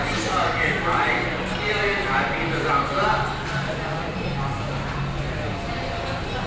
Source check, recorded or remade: recorded